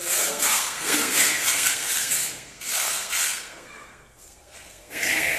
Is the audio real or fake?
fake